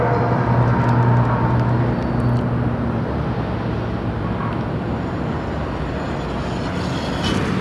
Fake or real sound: real